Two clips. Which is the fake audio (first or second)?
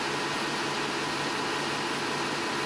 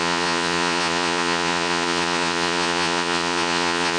second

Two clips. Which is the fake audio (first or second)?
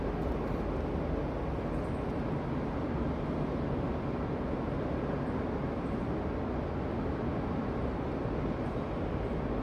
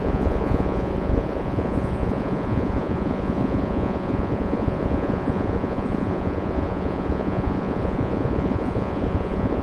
second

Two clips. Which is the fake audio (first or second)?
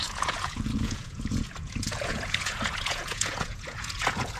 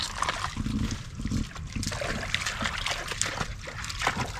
first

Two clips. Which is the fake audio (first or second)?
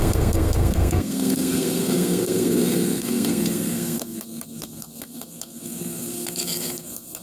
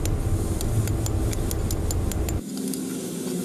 first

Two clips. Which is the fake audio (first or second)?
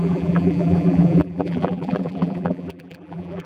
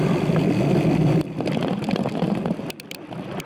first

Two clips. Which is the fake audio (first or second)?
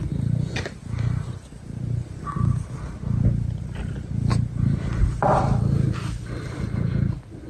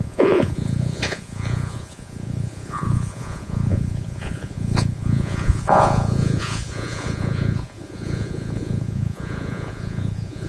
second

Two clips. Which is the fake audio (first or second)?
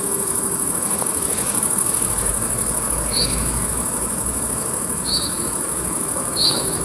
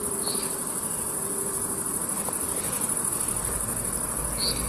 first